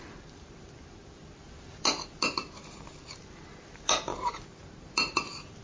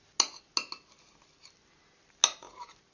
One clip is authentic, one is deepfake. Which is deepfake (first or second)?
first